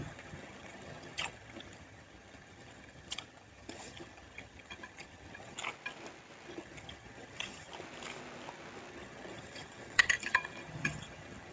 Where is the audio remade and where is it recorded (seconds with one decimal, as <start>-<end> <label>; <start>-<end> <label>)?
0.0-5.6 remade; 5.6-6.5 recorded; 6.5-7.7 remade; 7.7-8.9 recorded; 8.9-11.5 remade

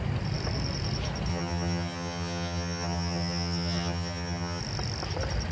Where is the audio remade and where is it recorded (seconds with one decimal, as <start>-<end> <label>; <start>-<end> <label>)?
0.0-1.3 recorded; 1.3-4.6 remade; 4.6-5.5 recorded

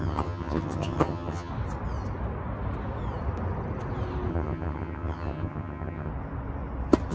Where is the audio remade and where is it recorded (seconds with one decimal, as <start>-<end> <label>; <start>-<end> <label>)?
0.0-1.5 remade; 1.5-4.3 recorded; 4.3-6.1 remade; 6.1-7.1 recorded

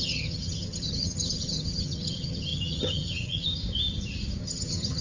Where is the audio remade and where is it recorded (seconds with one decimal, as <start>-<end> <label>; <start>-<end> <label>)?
0.0-3.6 remade; 3.6-4.4 recorded; 4.4-5.0 remade

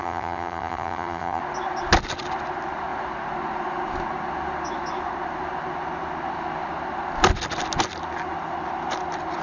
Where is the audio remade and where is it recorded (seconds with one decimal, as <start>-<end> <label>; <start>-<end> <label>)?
0.0-1.4 remade; 1.4-9.4 recorded

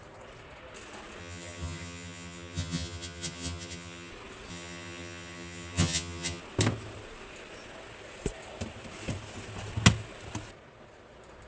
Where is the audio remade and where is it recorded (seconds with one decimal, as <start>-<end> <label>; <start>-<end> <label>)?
0.0-1.2 recorded; 1.2-4.1 remade; 4.1-4.5 recorded; 4.5-6.4 remade; 6.4-11.5 recorded